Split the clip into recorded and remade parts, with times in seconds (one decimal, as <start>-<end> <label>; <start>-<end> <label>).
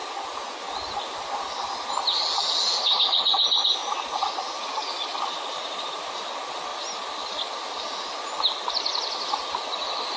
0.0-6.7 recorded; 6.7-8.0 remade; 8.0-10.2 recorded